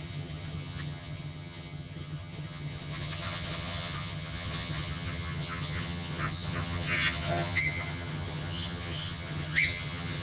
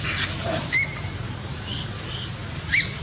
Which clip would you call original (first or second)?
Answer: second